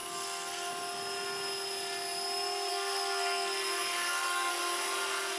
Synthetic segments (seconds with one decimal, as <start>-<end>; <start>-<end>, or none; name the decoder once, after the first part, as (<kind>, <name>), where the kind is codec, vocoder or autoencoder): 0.0-0.7 (codec, SNAC); 2.7-4.5